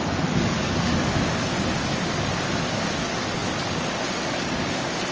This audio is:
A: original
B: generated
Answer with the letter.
B